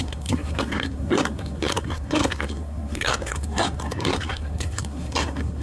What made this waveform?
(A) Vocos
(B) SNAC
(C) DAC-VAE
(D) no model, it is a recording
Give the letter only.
B